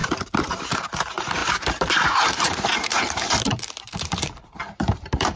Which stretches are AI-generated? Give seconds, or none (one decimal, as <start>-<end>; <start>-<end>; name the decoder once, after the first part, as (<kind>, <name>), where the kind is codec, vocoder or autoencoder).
0.0-5.4 (vocoder, BigVGAN v2)